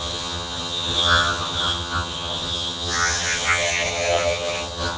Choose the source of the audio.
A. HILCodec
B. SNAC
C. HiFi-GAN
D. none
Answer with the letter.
C